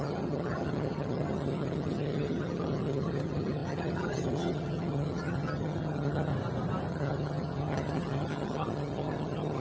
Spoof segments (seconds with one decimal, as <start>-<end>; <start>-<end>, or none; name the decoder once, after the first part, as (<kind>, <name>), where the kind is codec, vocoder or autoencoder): 0.0-6.3 (vocoder, HiFi-GAN); 6.9-9.6

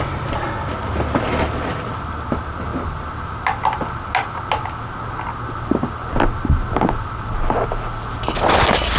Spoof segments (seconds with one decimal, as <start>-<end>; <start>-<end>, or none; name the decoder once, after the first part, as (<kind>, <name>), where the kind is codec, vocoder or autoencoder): none

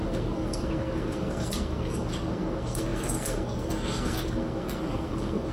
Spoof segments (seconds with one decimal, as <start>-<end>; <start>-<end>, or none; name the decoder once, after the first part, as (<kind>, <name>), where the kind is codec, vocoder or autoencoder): 0.0-5.5 (codec, SNAC)

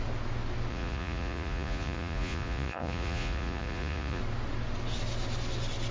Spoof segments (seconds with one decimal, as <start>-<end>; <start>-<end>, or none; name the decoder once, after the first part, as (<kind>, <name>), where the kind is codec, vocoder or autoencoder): 0.7-4.2 (vocoder, Vocos)

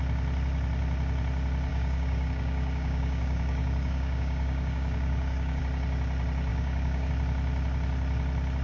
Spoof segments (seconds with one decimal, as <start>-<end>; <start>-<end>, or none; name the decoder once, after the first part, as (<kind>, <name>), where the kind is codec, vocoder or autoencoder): 1.7-5.6 (codec, DAC); 6.5-7.1

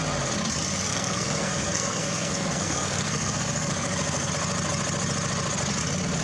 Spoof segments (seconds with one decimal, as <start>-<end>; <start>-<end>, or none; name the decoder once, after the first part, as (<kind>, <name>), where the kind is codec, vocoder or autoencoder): 0.9-4.3 (codec, SNAC)

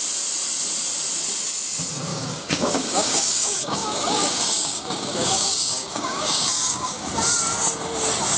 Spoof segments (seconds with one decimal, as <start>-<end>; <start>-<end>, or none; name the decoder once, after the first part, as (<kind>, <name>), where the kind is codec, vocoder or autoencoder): 2.1-7.1 (codec, DAC)